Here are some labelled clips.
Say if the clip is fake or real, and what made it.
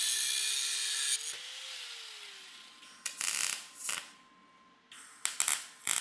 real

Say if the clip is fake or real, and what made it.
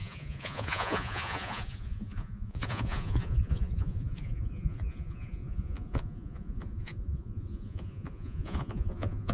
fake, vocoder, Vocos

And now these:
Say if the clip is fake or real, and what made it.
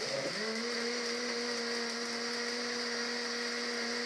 real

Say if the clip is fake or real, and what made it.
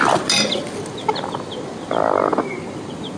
real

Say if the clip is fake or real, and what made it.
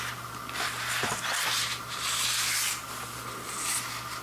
real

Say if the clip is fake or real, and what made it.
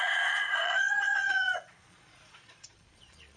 fake, vocoder, Vocos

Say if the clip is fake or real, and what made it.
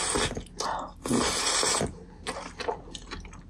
real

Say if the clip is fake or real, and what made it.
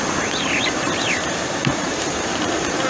fake, vocoder, BigVGAN v2